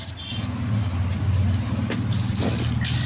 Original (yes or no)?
yes